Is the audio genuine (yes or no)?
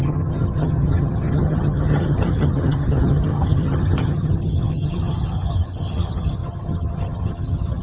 no